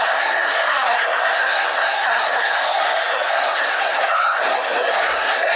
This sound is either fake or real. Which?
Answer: fake